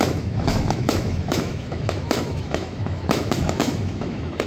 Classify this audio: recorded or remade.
remade